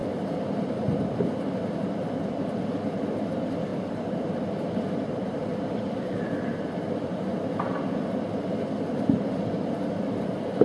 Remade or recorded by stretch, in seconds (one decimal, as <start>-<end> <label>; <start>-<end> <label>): 0.0-0.8 remade; 0.8-3.7 recorded; 3.7-7.7 remade; 7.7-10.6 recorded